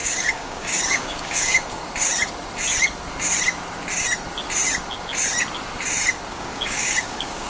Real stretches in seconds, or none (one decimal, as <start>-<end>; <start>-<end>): 1.8-6.3